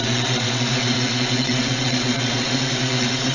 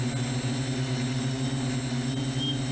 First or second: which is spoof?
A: first